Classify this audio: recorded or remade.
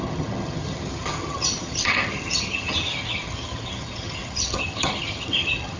remade